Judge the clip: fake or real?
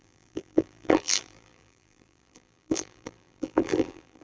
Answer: fake